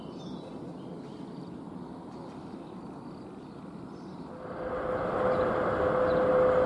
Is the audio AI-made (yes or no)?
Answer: no